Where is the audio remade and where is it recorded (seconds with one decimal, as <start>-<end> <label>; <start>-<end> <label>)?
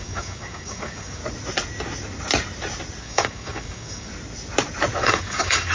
0.0-1.2 remade; 1.2-3.0 recorded; 3.0-4.1 remade; 4.1-5.0 recorded; 5.0-5.7 remade